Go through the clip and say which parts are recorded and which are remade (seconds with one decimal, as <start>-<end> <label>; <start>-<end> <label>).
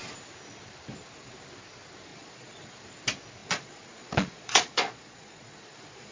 0.0-2.1 recorded; 2.1-2.7 remade; 2.7-3.4 recorded; 3.4-6.1 remade